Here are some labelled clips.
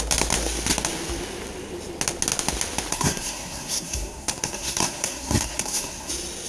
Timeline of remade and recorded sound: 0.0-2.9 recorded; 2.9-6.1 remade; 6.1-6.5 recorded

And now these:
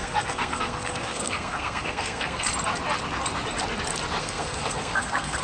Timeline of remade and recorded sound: 0.0-2.5 remade; 2.5-4.2 recorded; 4.2-5.4 remade